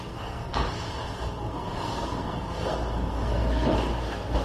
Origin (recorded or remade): remade